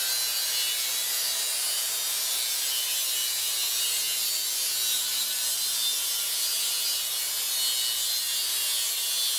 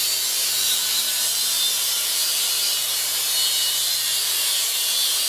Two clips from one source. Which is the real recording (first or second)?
first